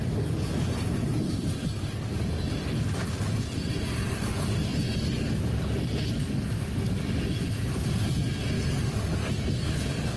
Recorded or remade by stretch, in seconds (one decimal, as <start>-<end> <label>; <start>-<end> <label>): 0.0-10.2 recorded